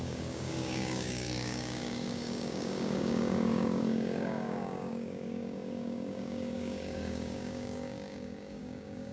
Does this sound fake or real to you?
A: fake